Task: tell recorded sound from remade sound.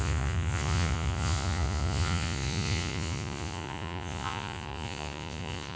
remade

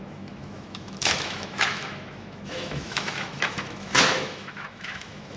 remade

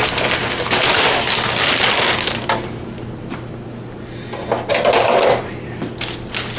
recorded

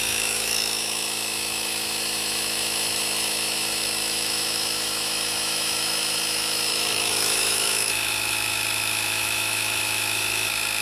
remade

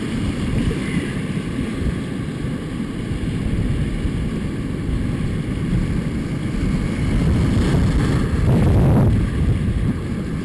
recorded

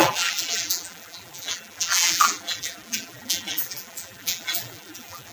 remade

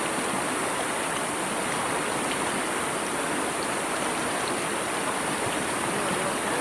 recorded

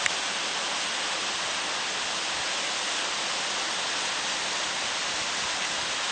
recorded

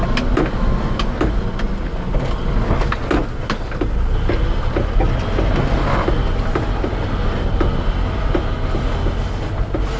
recorded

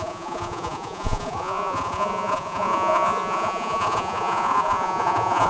remade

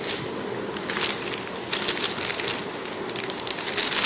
recorded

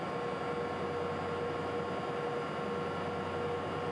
recorded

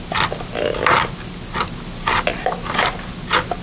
recorded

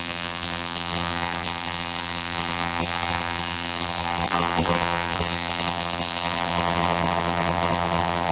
remade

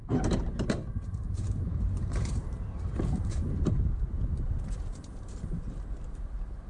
remade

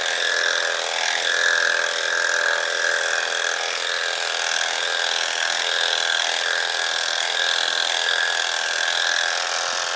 recorded